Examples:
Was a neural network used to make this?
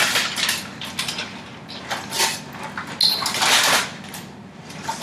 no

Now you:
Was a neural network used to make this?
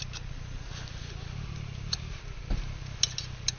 no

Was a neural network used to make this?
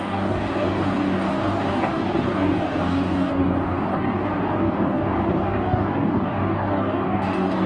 yes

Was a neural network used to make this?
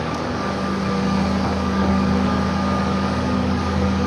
yes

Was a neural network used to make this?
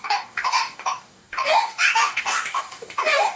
yes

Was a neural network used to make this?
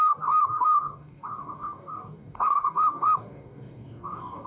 yes